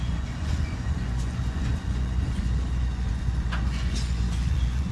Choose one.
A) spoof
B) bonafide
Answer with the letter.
A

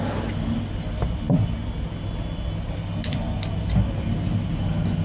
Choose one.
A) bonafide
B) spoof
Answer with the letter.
A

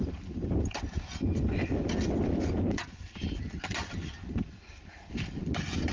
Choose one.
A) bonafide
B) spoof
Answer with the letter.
A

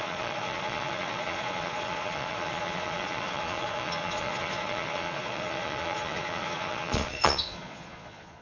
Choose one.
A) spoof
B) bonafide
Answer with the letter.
A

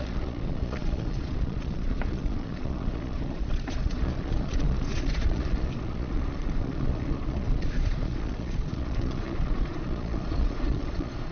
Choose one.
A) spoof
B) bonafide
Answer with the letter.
A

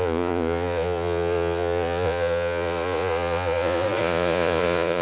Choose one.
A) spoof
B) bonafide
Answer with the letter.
A